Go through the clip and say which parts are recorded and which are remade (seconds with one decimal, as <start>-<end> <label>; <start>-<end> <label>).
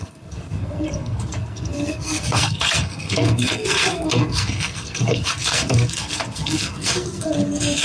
0.0-7.8 remade